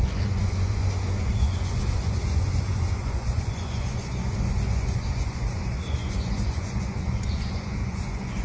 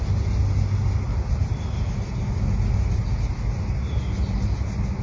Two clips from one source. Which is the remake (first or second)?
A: first